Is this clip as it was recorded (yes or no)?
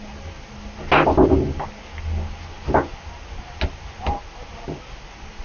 yes